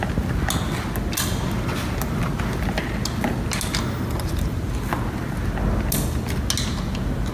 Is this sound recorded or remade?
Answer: recorded